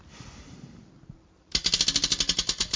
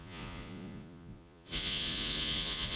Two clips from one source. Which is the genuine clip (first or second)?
first